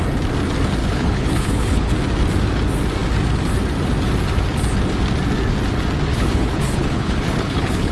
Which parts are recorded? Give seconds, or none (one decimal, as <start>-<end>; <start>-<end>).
0.0-0.8; 1.9-6.1